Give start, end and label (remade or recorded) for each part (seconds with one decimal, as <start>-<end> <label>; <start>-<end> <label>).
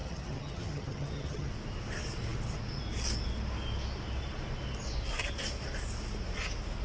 0.0-1.5 remade; 1.5-6.8 recorded